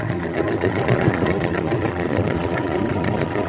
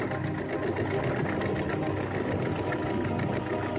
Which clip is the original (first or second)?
second